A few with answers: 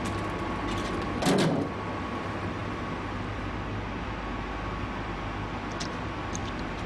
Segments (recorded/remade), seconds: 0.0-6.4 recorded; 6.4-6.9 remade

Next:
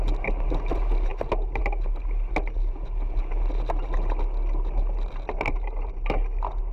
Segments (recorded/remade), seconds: 0.0-6.7 recorded

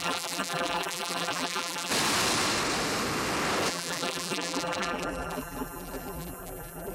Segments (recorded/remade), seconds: 0.0-1.9 remade; 1.9-3.7 recorded; 3.7-6.9 remade